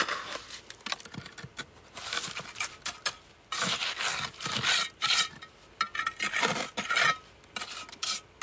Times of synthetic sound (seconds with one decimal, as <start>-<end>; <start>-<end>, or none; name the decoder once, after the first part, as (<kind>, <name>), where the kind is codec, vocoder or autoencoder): none

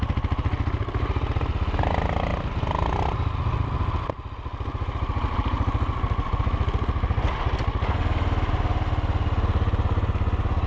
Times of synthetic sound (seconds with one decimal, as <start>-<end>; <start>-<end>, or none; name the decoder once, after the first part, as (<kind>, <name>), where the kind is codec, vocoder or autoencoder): none

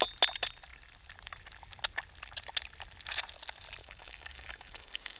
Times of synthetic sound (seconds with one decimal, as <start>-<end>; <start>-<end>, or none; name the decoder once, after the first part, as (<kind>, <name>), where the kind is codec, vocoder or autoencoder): 3.8-5.2 (codec, DAC)

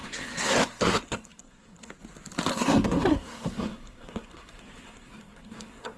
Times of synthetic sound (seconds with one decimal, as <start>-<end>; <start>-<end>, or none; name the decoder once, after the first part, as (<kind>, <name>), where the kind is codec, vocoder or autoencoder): 0.0-1.9 (codec, SNAC); 2.5-6.0

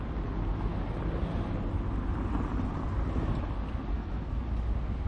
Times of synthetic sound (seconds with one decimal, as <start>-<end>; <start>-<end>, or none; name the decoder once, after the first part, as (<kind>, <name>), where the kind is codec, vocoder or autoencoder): 3.9-4.4 (codec, SNAC)

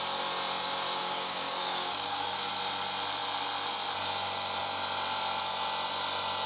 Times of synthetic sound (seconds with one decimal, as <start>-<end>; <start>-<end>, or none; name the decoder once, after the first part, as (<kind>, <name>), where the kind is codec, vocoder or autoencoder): 1.0-2.5 (codec, DAC)

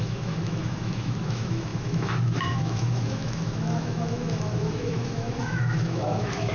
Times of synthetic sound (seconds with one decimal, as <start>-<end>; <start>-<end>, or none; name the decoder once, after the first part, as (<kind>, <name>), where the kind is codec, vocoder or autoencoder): 0.0-6.5 (autoencoder, DAC-VAE)